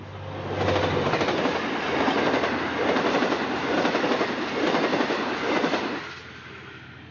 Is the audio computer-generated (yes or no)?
no